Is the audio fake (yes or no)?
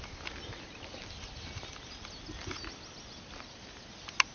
no